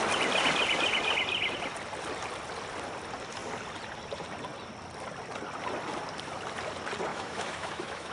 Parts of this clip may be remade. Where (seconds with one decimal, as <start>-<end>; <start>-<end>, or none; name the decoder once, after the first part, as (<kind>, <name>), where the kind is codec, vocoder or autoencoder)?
7.1-8.1 (autoencoder, DAC-VAE)